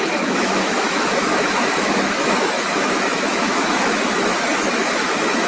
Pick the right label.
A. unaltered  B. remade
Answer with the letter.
B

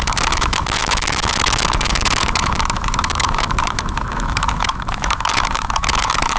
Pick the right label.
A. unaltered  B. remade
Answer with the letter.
B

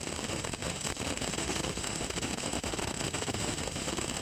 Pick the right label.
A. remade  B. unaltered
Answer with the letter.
A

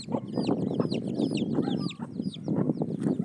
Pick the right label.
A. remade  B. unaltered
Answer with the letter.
B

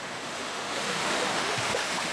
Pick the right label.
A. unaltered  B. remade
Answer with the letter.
B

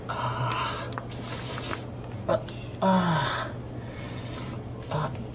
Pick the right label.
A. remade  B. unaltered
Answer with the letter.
B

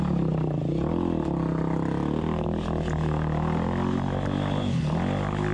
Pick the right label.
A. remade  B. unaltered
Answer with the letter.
B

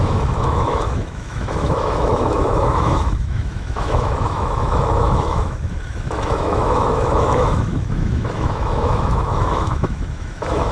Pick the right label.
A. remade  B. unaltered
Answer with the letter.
A